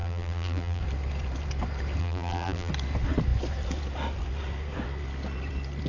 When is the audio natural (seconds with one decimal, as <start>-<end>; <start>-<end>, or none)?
0.8-2.0; 2.7-5.9